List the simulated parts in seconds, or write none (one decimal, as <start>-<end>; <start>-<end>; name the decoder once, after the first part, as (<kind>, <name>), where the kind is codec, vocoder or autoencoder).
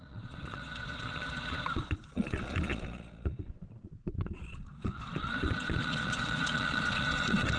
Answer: 0.0-7.6 (vocoder, Vocos)